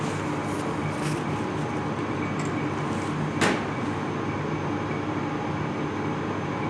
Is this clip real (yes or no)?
yes